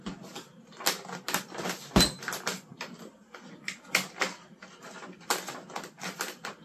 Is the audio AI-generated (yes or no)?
no